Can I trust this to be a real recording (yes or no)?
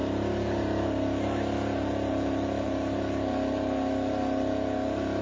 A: yes